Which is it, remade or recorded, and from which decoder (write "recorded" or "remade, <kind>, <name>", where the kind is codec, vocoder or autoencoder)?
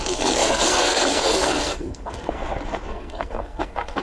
remade, codec, SNAC